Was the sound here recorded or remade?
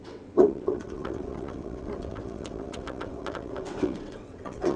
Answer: remade